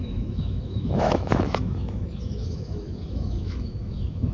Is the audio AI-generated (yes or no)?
yes